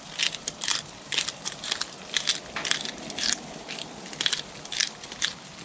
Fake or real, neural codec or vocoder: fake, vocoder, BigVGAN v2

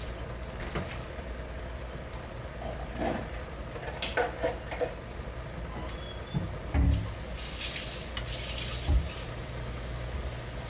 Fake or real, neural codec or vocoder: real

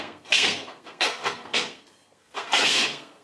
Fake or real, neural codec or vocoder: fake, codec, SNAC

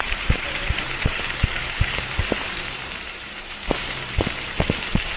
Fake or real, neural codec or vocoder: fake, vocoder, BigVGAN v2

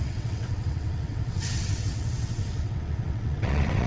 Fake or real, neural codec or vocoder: fake, vocoder, WaveNeXt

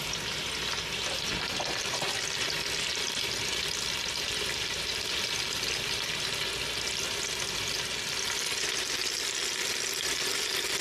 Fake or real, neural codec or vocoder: real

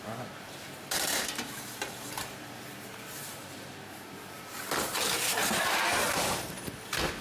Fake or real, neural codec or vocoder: fake, vocoder, BigVGAN v2